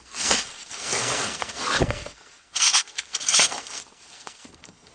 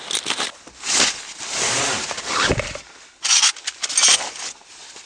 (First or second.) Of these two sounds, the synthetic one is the first